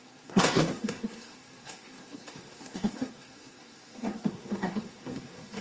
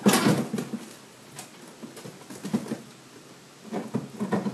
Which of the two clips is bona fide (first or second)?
second